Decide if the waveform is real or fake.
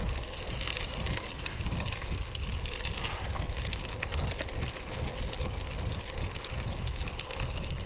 real